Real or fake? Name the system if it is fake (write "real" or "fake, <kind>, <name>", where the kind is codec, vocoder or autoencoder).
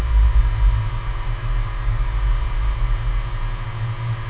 real